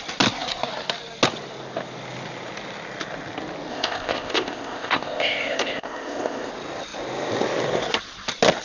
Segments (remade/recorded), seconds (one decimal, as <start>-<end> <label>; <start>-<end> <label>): 0.0-3.7 recorded; 3.7-6.5 remade; 6.5-8.6 recorded